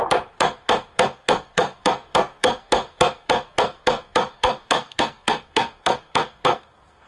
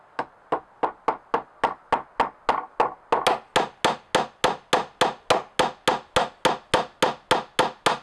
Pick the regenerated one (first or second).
first